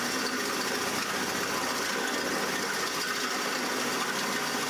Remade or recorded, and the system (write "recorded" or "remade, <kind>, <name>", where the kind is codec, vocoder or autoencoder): recorded